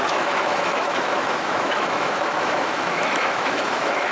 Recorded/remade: remade